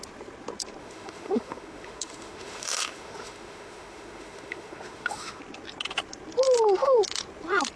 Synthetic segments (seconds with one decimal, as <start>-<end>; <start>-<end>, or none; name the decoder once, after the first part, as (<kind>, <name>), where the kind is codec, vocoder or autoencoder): 0.8-5.4 (autoencoder, DAC-VAE)